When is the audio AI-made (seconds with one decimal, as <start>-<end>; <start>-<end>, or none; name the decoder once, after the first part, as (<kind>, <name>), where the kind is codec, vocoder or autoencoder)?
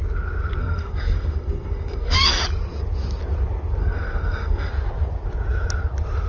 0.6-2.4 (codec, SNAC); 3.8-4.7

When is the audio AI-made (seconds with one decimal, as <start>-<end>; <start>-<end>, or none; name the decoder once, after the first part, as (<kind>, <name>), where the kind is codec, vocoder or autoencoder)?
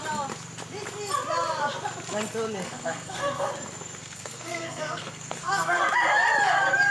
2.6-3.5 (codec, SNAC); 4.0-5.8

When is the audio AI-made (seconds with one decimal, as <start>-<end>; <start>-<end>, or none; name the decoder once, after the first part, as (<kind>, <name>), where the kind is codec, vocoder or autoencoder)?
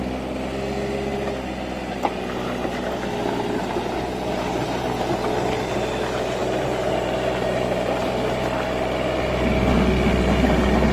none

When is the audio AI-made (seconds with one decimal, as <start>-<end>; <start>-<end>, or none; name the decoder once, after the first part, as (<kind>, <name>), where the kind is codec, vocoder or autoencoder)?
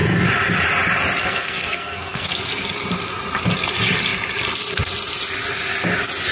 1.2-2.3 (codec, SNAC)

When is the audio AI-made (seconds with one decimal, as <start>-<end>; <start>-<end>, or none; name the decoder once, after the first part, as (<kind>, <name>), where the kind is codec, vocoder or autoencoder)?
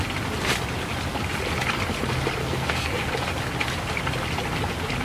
2.4-3.1 (codec, SNAC)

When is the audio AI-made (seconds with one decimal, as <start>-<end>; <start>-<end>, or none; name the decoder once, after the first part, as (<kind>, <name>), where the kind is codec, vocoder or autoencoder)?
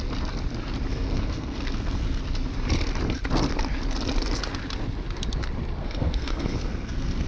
0.9-2.2 (codec, SNAC); 5.8-7.3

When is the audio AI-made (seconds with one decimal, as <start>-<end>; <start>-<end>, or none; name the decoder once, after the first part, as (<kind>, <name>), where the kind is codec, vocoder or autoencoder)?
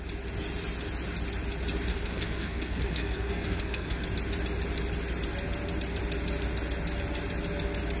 1.9-4.0 (codec, SNAC)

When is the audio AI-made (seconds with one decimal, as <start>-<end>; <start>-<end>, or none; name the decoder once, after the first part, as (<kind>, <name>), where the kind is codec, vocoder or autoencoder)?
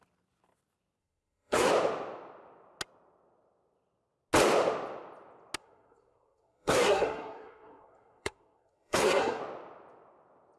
1.0-1.7 (codec, SNAC); 5.6-9.4